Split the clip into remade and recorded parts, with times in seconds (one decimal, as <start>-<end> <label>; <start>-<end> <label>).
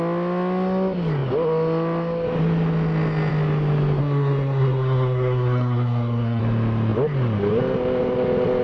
0.0-4.0 recorded; 4.0-6.4 remade; 6.4-8.6 recorded